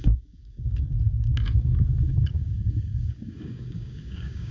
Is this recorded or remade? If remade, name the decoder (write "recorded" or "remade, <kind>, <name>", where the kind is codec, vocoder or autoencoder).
remade, codec, DAC